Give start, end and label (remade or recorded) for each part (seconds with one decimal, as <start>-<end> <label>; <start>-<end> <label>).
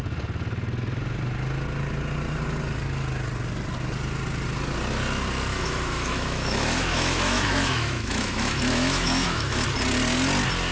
0.0-5.5 recorded; 5.5-9.6 remade; 9.6-10.7 recorded